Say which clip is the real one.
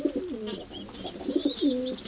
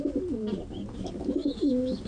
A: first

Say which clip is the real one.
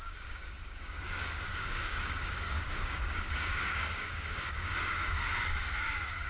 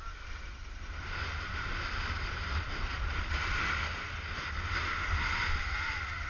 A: second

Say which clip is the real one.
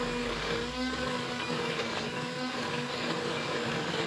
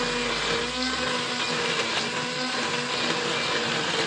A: second